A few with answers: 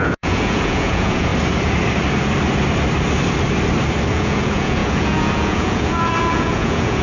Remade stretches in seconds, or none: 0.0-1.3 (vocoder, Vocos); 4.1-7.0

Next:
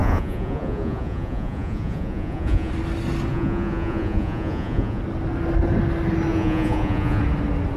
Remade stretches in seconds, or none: 0.0-2.7 (vocoder, Vocos); 3.3-5.0; 6.3-7.2

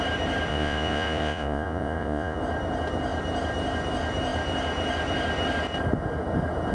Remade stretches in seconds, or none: 0.5-2.4 (vocoder, Vocos)

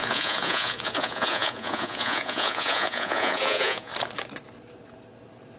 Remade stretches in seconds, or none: 0.0-3.9 (vocoder, Vocos)

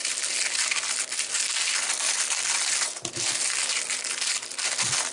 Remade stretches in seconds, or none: none